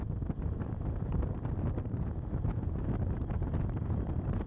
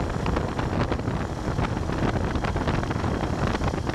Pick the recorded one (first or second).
second